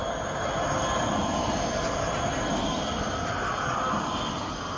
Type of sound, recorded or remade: recorded